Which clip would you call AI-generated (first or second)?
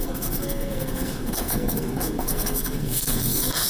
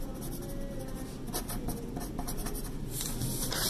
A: first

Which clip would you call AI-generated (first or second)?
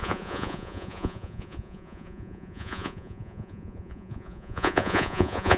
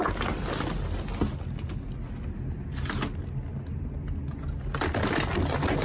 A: first